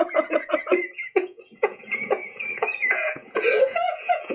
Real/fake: fake